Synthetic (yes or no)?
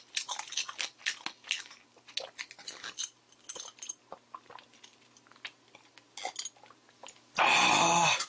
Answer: no